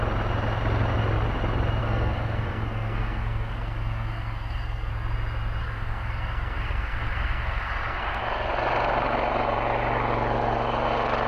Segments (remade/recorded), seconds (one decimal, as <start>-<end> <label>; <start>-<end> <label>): 0.0-1.8 recorded; 1.8-4.9 remade; 4.9-5.6 recorded; 5.6-8.2 remade; 8.2-11.3 recorded

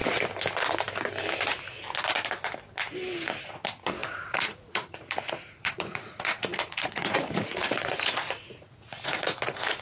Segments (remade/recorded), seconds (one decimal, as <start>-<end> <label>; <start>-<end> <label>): 0.0-3.4 recorded; 3.4-9.8 remade

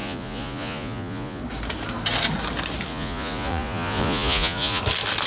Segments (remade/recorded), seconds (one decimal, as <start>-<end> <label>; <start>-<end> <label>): 0.0-1.4 remade; 1.4-2.9 recorded; 2.9-4.8 remade; 4.8-5.3 recorded

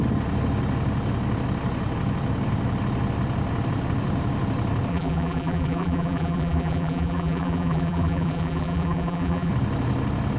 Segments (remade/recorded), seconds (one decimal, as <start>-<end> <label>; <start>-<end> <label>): 0.0-4.9 recorded; 4.9-9.5 remade; 9.5-10.4 recorded

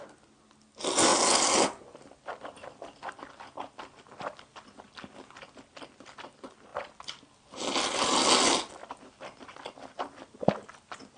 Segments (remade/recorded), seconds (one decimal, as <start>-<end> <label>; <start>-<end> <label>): 0.0-11.2 recorded

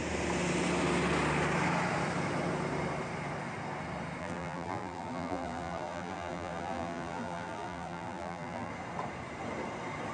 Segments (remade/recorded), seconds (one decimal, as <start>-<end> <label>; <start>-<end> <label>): 0.0-4.2 recorded; 4.2-8.7 remade; 8.7-10.1 recorded

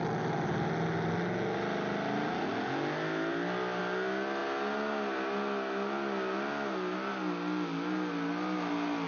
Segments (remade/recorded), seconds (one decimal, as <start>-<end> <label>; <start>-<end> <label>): 0.0-9.1 recorded